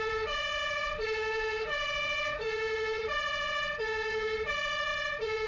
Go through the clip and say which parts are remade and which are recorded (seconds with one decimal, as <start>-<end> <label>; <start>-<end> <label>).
0.0-5.5 remade